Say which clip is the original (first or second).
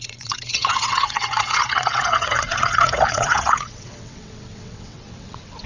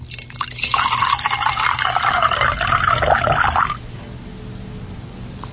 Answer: second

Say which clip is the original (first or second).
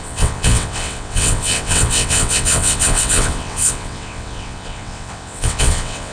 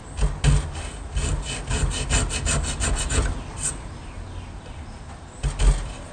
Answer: second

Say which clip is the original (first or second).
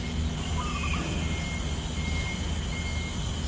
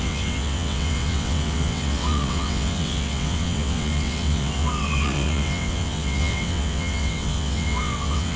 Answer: first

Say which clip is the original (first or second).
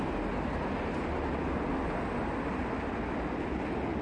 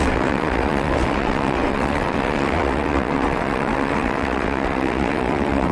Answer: first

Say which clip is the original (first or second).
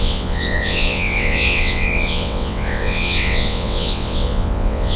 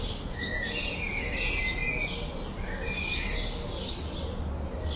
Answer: second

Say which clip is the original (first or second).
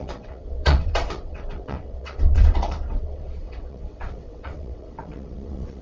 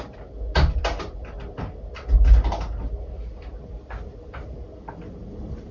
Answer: second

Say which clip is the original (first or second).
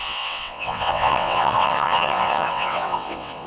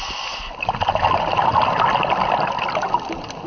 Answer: second